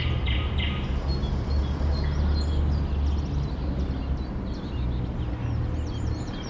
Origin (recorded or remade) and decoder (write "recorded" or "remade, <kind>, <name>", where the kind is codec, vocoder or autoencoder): recorded